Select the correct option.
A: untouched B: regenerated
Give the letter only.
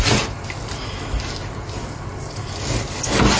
A